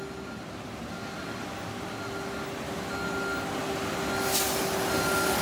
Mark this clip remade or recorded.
recorded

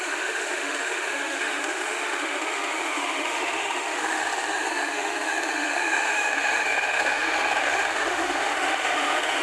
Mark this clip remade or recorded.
remade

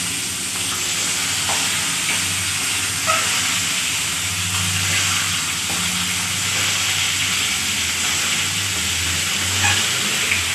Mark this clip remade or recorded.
recorded